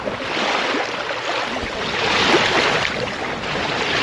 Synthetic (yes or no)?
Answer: no